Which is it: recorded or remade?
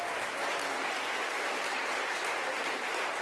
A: recorded